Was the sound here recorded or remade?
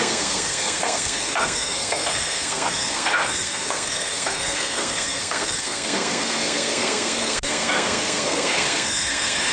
remade